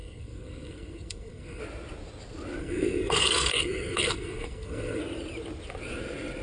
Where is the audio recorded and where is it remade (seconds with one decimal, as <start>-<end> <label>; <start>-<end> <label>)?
0.0-1.6 remade; 1.6-2.6 recorded; 2.6-5.0 remade; 5.0-6.4 recorded